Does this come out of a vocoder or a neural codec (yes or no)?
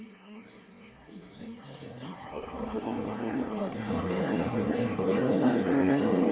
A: yes